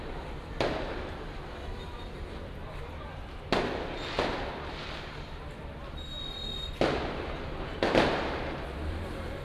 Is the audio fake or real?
real